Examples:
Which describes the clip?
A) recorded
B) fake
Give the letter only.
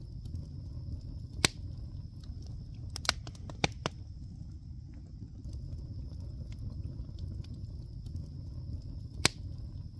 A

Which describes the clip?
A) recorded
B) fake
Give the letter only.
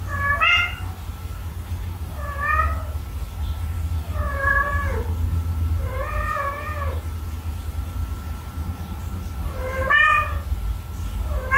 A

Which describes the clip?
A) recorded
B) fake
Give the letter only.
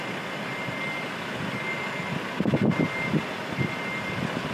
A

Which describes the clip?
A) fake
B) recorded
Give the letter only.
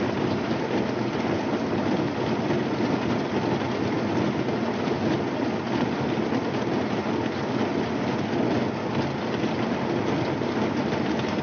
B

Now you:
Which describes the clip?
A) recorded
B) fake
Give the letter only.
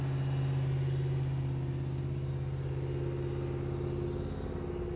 A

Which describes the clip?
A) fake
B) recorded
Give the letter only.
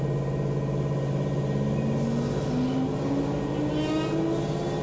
B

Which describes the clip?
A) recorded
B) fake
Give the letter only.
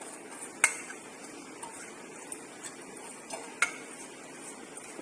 A